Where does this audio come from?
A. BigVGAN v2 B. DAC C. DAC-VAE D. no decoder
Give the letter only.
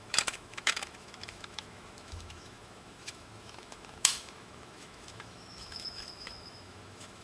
C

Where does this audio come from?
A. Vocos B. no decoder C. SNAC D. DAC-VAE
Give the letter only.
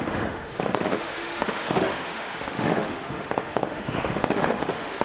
D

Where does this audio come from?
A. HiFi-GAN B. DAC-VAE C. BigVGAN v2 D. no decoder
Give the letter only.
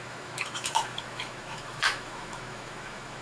B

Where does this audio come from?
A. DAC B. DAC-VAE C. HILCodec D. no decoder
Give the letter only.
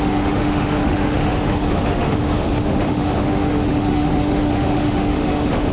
B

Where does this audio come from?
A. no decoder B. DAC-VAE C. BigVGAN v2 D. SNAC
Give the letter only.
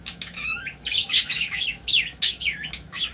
B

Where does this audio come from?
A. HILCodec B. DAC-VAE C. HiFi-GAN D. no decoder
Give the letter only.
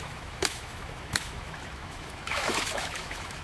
B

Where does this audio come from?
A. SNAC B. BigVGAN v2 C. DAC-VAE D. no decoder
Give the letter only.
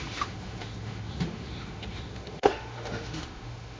C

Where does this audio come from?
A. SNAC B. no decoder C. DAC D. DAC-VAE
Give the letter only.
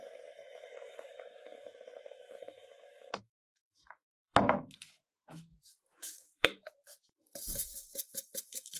D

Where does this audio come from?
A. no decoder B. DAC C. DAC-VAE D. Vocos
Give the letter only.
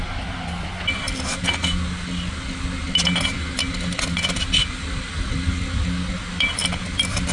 A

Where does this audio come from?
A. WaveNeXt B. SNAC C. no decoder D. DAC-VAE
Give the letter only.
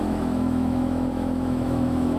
D